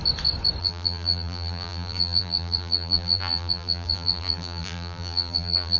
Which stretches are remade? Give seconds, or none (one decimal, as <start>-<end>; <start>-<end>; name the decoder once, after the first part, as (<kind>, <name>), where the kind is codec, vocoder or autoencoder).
0.6-5.8 (vocoder, BigVGAN v2)